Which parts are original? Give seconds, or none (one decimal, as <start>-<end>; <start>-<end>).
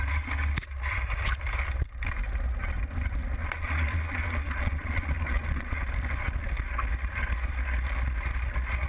0.0-3.4; 5.8-8.9